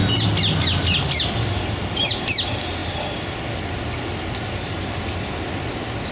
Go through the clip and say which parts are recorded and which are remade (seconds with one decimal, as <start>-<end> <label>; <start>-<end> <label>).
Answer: 0.0-6.1 recorded